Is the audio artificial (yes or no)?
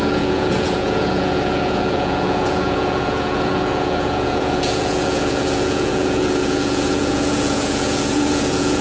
yes